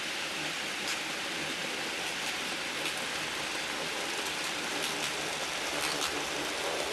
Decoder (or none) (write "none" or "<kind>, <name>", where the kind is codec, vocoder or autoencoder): none